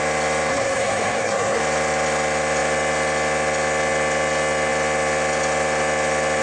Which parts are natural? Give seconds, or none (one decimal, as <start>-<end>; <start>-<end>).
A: 0.0-0.5; 1.6-6.4

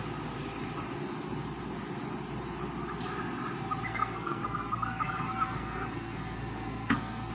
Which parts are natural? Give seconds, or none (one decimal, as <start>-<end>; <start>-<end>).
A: 0.0-3.9